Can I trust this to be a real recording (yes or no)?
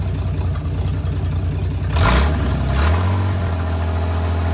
yes